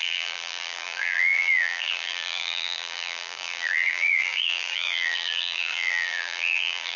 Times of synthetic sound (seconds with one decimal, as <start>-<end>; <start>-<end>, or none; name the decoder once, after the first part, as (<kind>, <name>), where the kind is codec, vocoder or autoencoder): 0.0-7.0 (vocoder, BigVGAN v2)